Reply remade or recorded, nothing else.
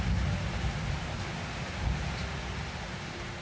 recorded